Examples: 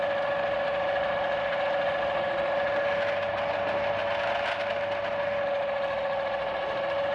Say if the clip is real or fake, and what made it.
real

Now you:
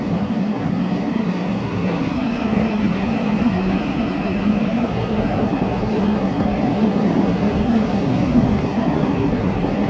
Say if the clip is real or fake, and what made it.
fake, codec, SNAC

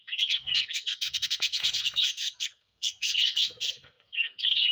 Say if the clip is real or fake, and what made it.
fake, codec, SNAC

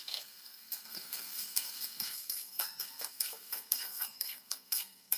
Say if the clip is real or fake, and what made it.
fake, codec, SNAC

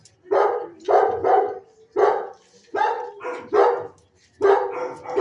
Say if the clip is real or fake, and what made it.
real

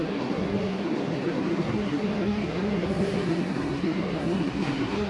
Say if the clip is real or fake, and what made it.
fake, codec, SNAC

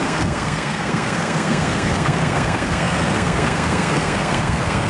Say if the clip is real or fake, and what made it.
fake, codec, SNAC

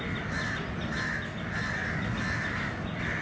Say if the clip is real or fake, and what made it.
real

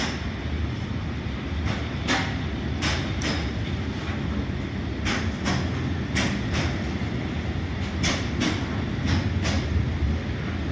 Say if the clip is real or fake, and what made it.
real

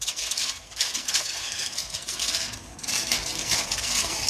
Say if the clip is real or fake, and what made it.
fake, codec, SNAC